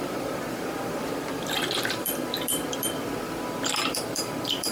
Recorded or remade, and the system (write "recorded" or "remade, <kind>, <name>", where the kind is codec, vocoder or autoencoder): remade, vocoder, BigVGAN v2